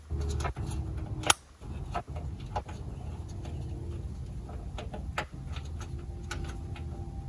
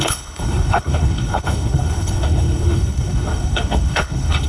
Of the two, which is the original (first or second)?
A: first